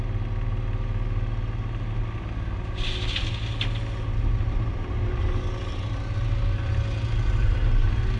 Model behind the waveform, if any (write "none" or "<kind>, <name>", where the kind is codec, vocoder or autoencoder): none